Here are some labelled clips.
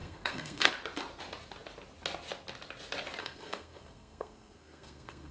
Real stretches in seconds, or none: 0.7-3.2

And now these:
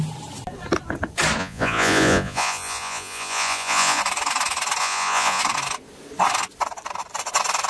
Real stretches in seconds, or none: 0.0-1.4; 4.0-4.8; 5.4-7.7

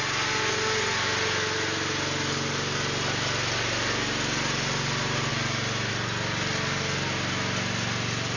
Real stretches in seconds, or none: 0.0-8.4

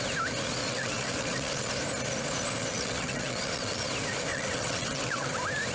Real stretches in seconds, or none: 0.0-0.6; 1.7-2.6; 3.8-4.3; 5.3-5.7

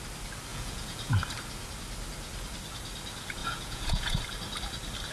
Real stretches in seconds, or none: 0.0-0.5; 1.1-3.4; 4.2-5.1

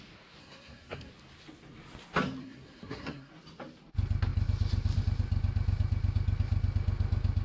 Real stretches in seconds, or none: 0.0-0.4; 1.1-2.4; 3.3-7.4

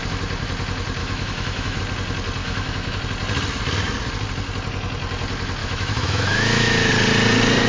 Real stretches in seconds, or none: 0.0-1.0; 1.8-2.4; 3.0-5.6; 6.9-7.7